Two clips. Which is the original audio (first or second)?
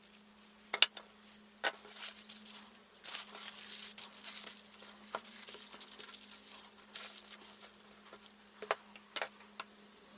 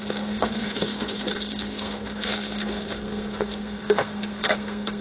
first